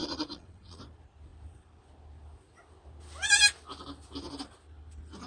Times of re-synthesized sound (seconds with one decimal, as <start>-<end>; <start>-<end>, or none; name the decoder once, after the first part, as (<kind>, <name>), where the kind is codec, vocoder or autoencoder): 0.0-0.8 (vocoder, Vocos)